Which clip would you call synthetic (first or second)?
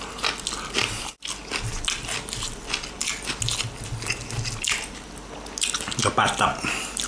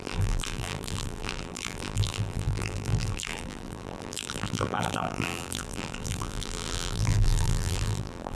second